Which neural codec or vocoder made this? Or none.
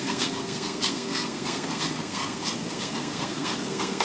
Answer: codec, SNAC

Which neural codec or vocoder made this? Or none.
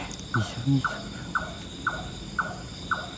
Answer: none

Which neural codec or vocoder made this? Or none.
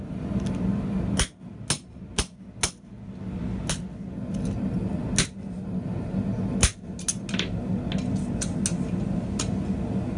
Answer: none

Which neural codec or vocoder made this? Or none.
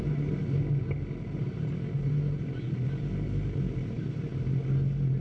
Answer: none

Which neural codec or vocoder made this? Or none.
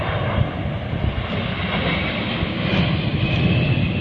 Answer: none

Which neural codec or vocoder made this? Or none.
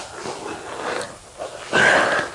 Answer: none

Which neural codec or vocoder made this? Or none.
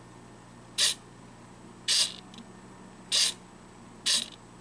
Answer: none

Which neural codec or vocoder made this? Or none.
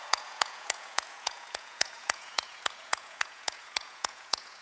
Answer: vocoder, Vocos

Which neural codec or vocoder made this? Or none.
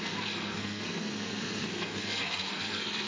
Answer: codec, SNAC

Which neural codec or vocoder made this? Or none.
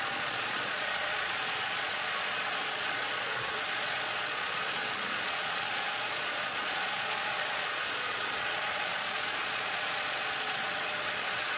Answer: vocoder, Vocos